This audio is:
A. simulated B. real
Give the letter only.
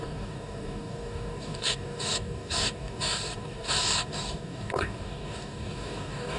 A